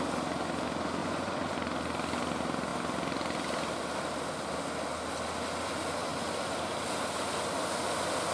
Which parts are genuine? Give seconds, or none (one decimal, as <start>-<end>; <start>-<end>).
0.0-1.0; 1.5-8.3